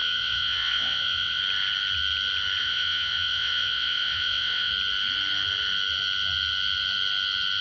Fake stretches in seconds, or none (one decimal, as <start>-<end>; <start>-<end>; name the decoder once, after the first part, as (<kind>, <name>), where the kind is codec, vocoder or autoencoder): 0.0-1.4 (vocoder, WaveNeXt); 2.6-4.7